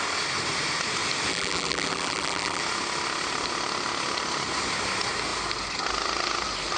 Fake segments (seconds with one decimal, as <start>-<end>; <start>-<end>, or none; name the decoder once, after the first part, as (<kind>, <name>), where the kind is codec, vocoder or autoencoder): 1.3-2.6 (vocoder, BigVGAN v2)